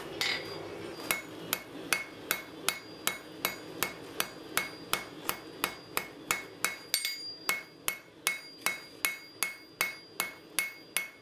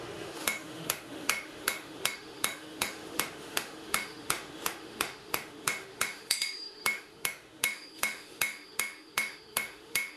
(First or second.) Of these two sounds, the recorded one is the first